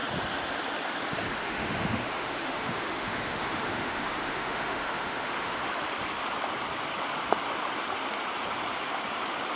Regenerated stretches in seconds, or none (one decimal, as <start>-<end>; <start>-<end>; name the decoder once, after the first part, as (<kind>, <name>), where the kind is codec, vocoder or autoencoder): 1.4-5.7 (autoencoder, DAC-VAE)